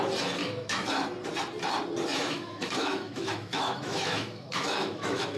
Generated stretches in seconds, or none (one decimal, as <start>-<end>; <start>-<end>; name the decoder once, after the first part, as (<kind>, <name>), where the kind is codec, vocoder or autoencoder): 0.4-0.9 (autoencoder, DAC-VAE); 2.1-5.4